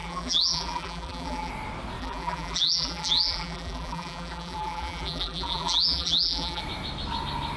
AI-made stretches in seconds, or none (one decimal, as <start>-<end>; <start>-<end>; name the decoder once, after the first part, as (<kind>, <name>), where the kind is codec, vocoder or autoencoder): 0.0-1.5 (vocoder, BigVGAN v2); 2.0-6.6